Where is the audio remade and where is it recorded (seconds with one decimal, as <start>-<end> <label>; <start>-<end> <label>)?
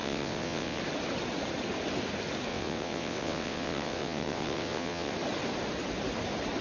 0.0-0.8 remade; 0.8-2.5 recorded; 2.5-5.1 remade; 5.1-6.6 recorded